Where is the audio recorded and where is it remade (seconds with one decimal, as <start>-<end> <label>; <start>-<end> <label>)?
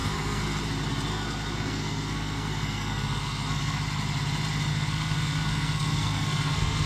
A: 0.0-0.6 remade; 0.6-1.1 recorded; 1.1-3.8 remade; 3.8-4.7 recorded; 4.7-6.9 remade